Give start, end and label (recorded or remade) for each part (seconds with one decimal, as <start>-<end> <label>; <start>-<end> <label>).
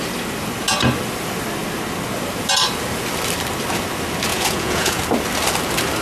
0.0-4.3 recorded; 4.3-5.0 remade; 5.0-6.0 recorded